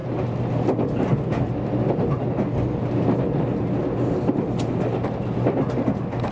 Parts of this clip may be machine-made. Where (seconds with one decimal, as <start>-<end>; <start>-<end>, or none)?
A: none